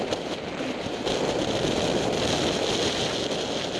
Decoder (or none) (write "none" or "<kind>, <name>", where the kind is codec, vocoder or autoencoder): none